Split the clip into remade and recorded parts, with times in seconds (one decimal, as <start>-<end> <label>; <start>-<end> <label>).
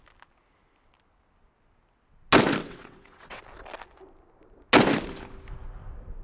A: 0.0-2.6 recorded; 2.6-3.4 remade; 3.4-6.2 recorded